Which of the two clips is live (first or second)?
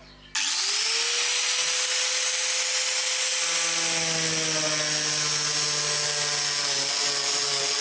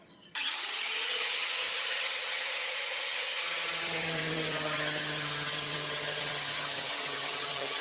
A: first